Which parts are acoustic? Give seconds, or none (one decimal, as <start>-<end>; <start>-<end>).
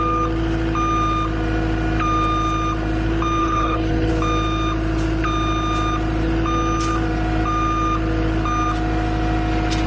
0.0-3.4; 4.1-9.9